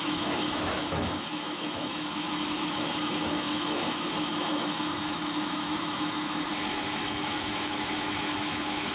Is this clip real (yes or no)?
no